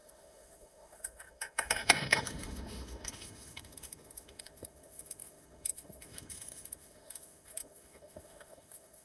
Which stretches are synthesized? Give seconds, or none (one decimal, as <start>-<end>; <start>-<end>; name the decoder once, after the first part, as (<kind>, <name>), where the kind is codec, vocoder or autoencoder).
0.0-9.0 (autoencoder, DAC-VAE)